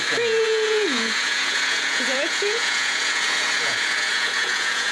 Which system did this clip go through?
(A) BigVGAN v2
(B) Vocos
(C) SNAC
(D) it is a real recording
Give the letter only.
B